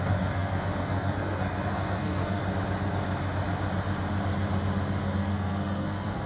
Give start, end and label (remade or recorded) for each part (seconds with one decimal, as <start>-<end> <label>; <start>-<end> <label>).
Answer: 0.0-2.4 remade; 2.4-5.0 recorded; 5.0-6.3 remade